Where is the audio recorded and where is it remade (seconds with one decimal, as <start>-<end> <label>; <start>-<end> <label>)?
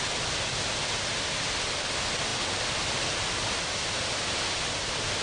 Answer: 0.0-5.2 recorded